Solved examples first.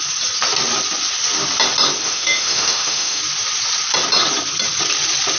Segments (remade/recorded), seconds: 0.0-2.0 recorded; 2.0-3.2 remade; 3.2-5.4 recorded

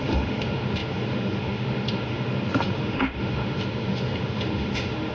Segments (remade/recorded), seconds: 0.0-5.1 remade

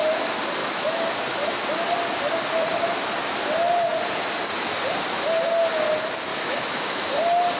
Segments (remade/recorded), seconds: 0.0-0.6 recorded; 0.6-1.1 remade; 1.1-6.3 recorded; 6.3-7.1 remade; 7.1-7.6 recorded

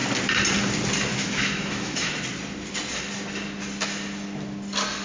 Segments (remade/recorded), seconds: 0.0-1.1 recorded; 1.1-2.1 remade; 2.1-5.0 recorded

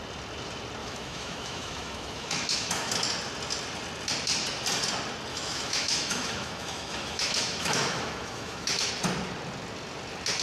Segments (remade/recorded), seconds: 0.0-0.8 recorded; 0.8-2.9 remade; 2.9-5.3 recorded; 5.3-8.9 remade; 8.9-10.4 recorded

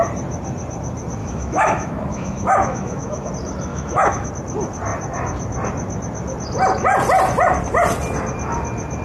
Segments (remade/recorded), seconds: 0.0-1.2 recorded; 1.2-3.3 remade; 3.3-3.7 recorded; 3.7-4.3 remade; 4.3-9.0 recorded

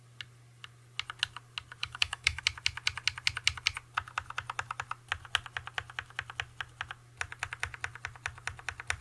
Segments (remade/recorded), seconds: 0.0-1.8 recorded; 1.8-2.4 remade; 2.4-9.0 recorded

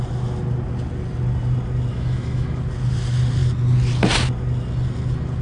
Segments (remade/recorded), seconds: 0.0-1.9 recorded; 1.9-2.6 remade; 2.6-5.4 recorded